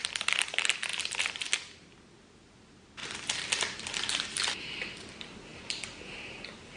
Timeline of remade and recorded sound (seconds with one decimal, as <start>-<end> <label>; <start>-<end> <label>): 0.0-3.0 recorded; 3.0-4.8 remade; 4.8-5.5 recorded; 5.5-6.8 remade